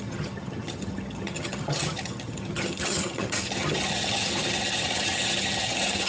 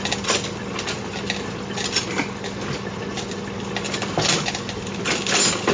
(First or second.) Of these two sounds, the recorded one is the second